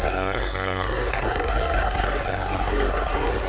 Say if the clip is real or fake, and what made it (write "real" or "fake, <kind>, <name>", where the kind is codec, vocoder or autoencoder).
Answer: fake, codec, SNAC